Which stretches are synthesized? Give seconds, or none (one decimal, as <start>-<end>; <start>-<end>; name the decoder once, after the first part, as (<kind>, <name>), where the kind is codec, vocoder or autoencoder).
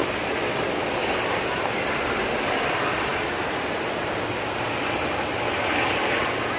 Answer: 0.0-0.8 (vocoder, BigVGAN v2)